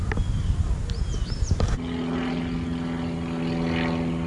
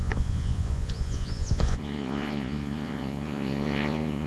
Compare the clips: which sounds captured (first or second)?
first